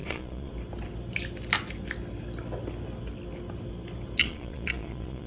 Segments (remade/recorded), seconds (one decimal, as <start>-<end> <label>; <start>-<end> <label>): 0.0-0.5 remade; 0.5-4.2 recorded; 4.2-5.3 remade